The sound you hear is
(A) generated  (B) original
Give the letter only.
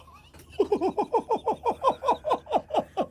A